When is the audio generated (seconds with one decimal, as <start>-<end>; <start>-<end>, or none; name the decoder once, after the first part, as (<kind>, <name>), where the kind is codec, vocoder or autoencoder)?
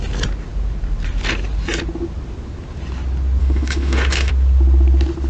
3.4-4.3 (autoencoder, DAC-VAE)